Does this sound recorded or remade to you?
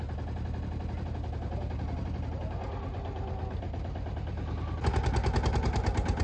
recorded